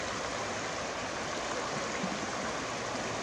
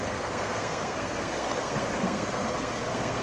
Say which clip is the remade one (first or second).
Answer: second